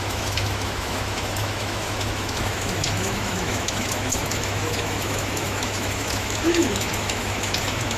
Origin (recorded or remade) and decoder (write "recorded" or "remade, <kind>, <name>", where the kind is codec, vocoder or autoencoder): remade, autoencoder, DAC-VAE